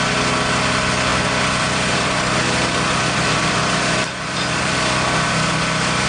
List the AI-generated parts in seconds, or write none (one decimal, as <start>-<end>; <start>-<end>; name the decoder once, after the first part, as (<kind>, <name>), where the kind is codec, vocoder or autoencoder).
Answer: 1.1-4.8 (vocoder, BigVGAN v2)